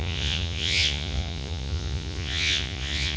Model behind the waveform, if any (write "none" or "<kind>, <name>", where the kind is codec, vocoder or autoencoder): vocoder, Vocos